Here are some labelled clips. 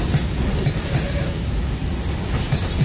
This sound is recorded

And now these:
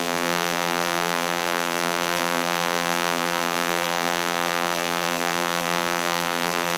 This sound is remade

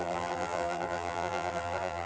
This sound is remade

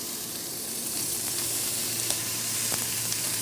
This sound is remade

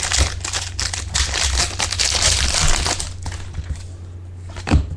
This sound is recorded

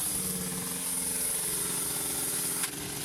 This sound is recorded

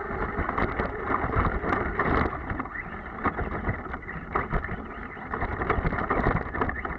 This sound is recorded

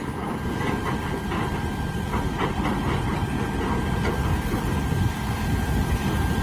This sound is remade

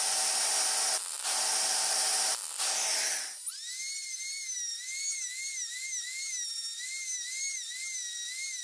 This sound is recorded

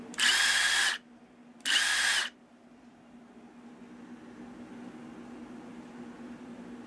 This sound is recorded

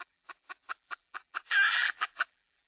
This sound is remade